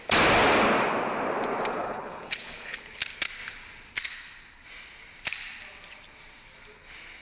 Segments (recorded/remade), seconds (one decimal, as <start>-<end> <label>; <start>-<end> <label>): 0.0-1.7 recorded; 1.7-3.0 remade; 3.0-7.2 recorded

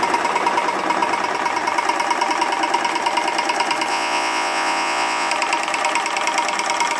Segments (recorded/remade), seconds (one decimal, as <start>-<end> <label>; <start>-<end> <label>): 0.0-3.9 recorded; 3.9-5.3 remade; 5.3-7.0 recorded

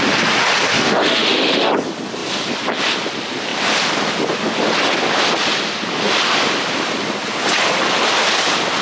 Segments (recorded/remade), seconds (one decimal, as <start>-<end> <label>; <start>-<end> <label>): 0.0-0.7 recorded; 0.7-1.7 remade; 1.7-8.8 recorded

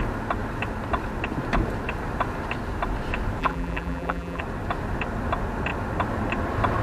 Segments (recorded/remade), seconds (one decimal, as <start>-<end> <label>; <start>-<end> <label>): 0.0-3.4 recorded; 3.4-4.4 remade; 4.4-6.8 recorded

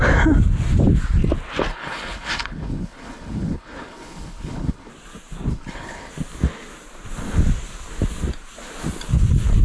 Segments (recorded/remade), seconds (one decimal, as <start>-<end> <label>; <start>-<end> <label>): 0.0-1.7 recorded; 1.7-4.9 remade; 4.9-5.5 recorded; 5.5-6.1 remade; 6.1-9.6 recorded

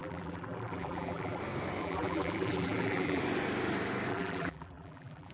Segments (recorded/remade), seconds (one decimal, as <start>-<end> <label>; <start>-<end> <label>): 0.0-1.4 remade; 1.4-1.8 recorded; 1.8-3.2 remade; 3.2-4.1 recorded; 4.1-5.3 remade

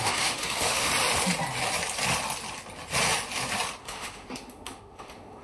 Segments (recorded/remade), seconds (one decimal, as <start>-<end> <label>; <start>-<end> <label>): 0.0-0.9 remade; 0.9-3.8 recorded; 3.8-5.4 remade